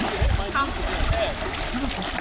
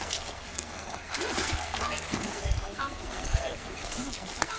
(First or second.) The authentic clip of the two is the first